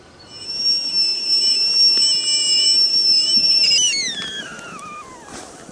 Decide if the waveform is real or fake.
real